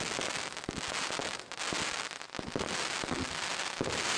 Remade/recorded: recorded